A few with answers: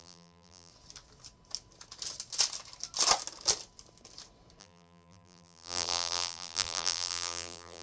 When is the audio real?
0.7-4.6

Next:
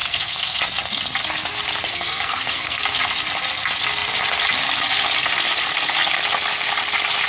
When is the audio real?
0.6-1.9; 2.8-7.3

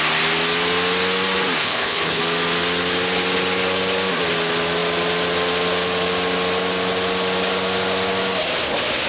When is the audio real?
0.0-1.6; 2.2-9.1

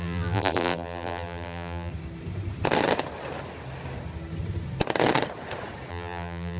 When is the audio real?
1.9-5.9

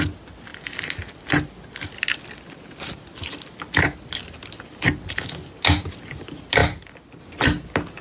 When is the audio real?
0.0-8.0

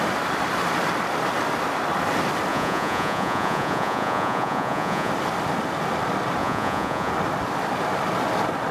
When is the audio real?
0.0-2.5; 5.1-6.4; 7.1-8.7

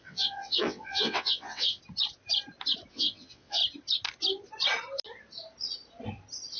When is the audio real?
1.8-2.9; 3.6-6.6